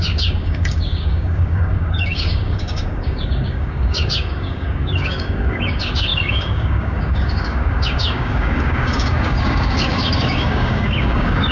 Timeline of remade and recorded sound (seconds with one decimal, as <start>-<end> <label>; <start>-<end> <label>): 0.0-11.5 remade